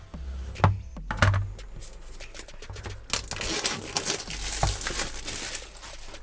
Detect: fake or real real